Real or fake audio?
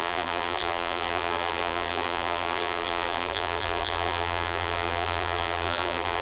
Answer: fake